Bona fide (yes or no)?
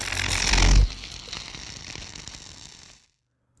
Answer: yes